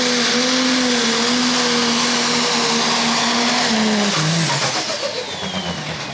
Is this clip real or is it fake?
real